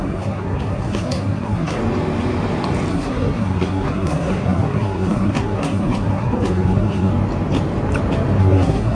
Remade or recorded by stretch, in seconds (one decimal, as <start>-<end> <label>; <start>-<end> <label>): 0.0-1.8 remade; 1.8-2.9 recorded; 2.9-7.1 remade; 7.1-8.4 recorded; 8.4-8.9 remade